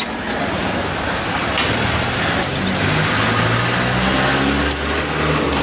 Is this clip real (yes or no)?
yes